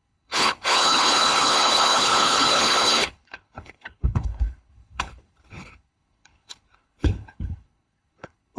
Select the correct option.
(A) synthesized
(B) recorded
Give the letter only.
A